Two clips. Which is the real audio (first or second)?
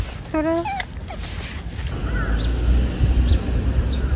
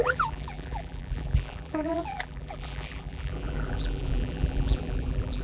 first